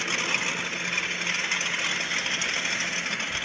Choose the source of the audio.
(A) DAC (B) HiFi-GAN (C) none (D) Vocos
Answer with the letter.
C